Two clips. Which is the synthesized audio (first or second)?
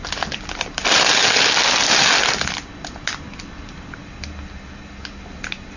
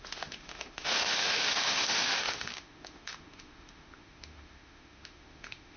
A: second